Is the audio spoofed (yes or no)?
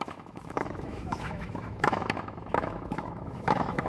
yes